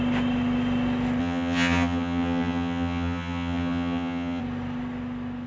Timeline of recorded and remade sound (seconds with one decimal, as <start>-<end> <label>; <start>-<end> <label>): 0.0-1.2 recorded; 1.2-4.4 remade; 4.4-5.5 recorded